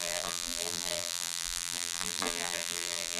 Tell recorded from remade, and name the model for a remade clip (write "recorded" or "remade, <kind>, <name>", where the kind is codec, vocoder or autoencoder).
remade, vocoder, BigVGAN v2